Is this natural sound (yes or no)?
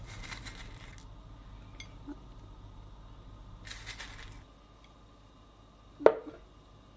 yes